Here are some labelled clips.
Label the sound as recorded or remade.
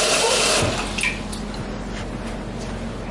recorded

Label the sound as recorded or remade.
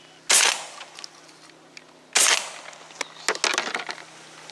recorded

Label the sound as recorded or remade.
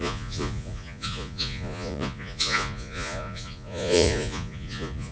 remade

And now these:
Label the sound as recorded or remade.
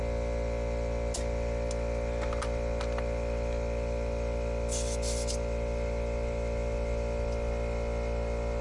recorded